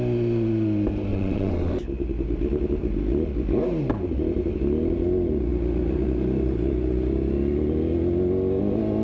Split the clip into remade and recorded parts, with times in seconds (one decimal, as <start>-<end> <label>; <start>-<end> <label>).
0.0-1.1 recorded; 1.1-1.7 remade; 1.7-9.0 recorded